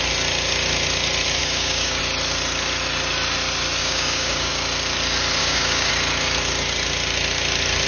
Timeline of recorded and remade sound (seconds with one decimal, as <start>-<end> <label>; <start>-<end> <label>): 0.0-1.4 recorded; 1.4-2.0 remade; 2.0-3.8 recorded; 3.8-4.5 remade; 4.5-5.4 recorded; 5.4-5.9 remade; 5.9-7.9 recorded